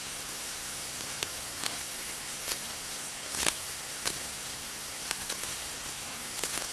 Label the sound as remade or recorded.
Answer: remade